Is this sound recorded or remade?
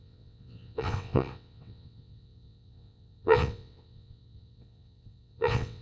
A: remade